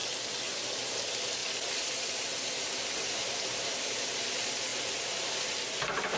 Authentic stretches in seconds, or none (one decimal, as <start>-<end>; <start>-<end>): 0.0-0.8; 1.4-2.9